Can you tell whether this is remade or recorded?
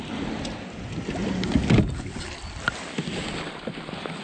recorded